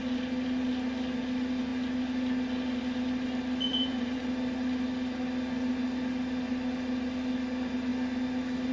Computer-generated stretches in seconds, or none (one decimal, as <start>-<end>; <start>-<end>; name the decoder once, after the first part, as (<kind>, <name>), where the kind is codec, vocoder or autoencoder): 3.7-4.2 (vocoder, BigVGAN v2)